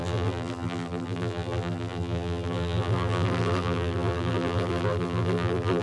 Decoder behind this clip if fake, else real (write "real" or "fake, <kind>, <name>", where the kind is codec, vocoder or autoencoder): fake, vocoder, BigVGAN v2